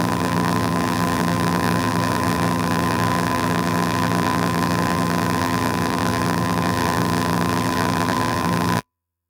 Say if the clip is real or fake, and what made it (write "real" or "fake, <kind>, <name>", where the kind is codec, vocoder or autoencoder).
fake, vocoder, BigVGAN v2